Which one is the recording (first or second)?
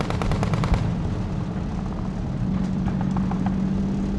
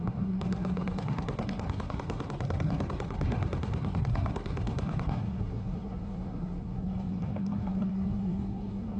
first